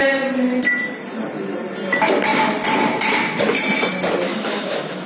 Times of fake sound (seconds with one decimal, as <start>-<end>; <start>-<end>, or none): 4.3-5.1